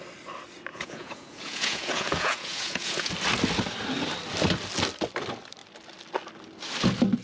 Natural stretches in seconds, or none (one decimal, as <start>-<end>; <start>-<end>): 0.0-0.7; 3.1-7.2